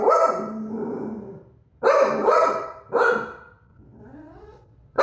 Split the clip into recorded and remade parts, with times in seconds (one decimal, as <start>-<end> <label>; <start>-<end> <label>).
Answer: 0.0-2.2 recorded; 2.2-2.8 remade; 2.8-3.7 recorded; 3.7-5.0 remade